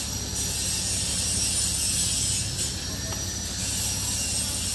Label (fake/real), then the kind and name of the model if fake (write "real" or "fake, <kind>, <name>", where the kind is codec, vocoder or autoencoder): real